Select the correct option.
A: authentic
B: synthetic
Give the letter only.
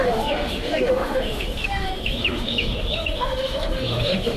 B